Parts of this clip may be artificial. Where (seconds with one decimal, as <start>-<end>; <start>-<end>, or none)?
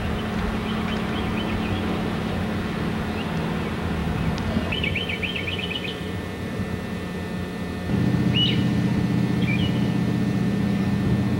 4.0-6.6